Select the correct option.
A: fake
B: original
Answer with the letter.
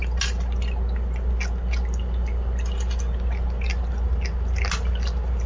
B